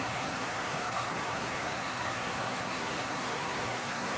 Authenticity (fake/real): fake